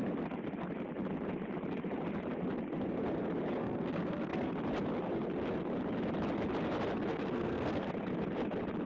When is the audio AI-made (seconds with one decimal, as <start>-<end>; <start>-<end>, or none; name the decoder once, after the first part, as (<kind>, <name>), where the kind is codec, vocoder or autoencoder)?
3.6-4.5 (codec, SNAC); 7.1-7.9